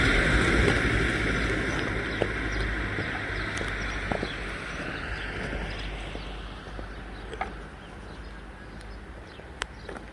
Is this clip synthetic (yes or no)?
no